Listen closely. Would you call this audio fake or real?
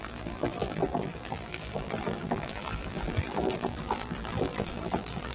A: fake